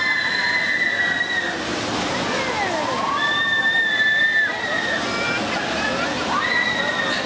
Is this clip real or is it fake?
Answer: real